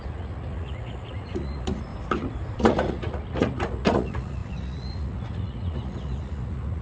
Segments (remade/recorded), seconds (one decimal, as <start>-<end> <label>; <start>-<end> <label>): 0.0-1.9 remade; 1.9-2.5 recorded; 2.5-6.8 remade